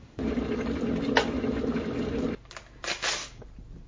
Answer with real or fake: real